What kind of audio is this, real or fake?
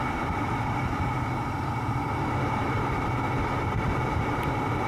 real